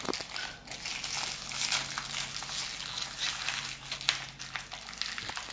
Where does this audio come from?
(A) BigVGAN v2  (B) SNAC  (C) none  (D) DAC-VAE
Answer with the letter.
C